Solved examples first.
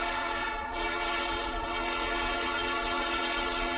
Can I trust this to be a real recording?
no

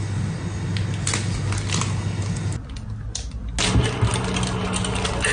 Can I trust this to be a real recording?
yes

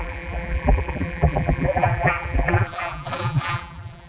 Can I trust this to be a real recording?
no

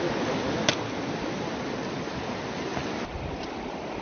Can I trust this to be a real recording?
yes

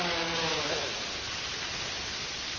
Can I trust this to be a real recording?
yes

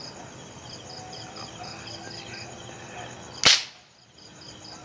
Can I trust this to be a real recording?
yes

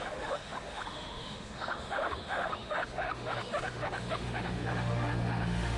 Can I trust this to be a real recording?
no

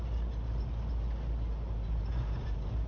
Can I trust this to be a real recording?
yes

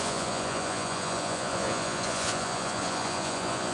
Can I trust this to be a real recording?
no